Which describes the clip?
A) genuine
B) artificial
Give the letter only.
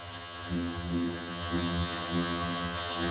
B